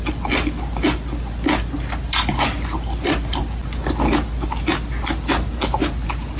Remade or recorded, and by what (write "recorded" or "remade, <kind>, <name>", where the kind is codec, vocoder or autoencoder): recorded